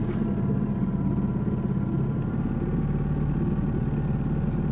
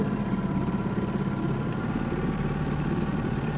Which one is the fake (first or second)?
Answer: second